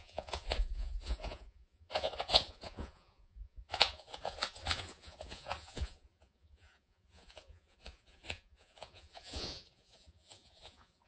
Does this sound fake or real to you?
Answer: fake